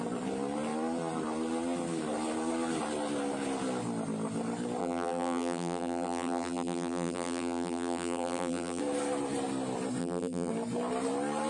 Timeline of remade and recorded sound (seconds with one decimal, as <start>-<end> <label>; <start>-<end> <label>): 0.0-4.8 recorded; 4.8-8.8 remade; 8.8-10.0 recorded; 10.0-10.5 remade; 10.5-11.5 recorded